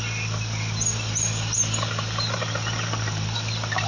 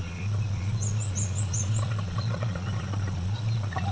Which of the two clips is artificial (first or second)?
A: second